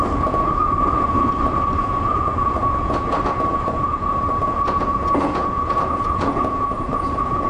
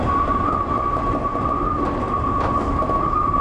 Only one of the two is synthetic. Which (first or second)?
first